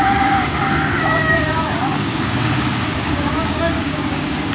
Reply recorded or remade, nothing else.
remade